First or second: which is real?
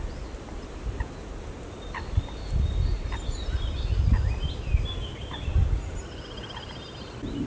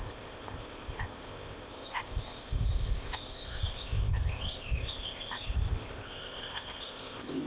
first